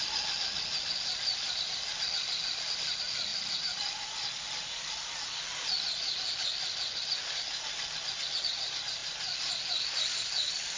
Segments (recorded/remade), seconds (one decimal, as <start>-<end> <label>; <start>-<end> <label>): 0.0-10.8 recorded